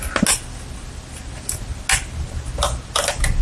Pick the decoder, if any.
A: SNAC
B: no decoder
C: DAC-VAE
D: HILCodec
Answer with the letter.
B